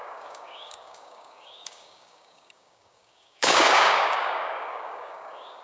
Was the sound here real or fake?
fake